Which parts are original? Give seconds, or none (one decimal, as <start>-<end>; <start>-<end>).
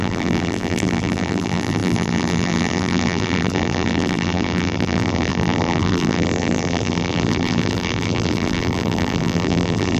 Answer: none